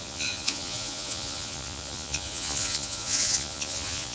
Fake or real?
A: fake